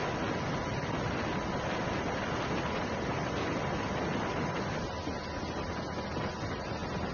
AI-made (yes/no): no